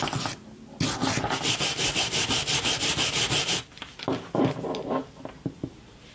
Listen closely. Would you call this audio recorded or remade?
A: recorded